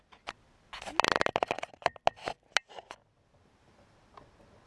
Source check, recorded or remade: recorded